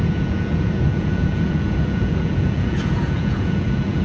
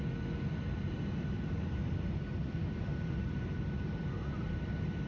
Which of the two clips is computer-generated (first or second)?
first